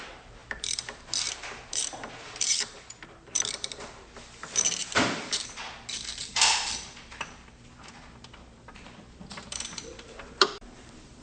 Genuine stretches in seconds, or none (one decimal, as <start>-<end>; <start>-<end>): none